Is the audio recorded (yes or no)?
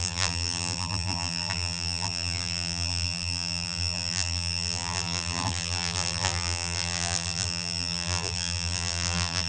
no